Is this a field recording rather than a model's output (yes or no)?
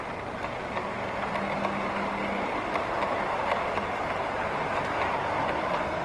yes